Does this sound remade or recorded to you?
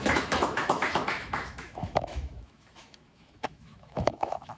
remade